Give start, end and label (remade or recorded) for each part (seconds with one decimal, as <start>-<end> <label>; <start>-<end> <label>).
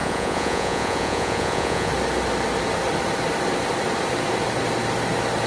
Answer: 0.0-1.9 remade; 1.9-5.5 recorded